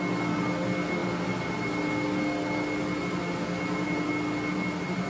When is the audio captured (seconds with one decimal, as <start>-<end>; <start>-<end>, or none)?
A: 0.0-5.1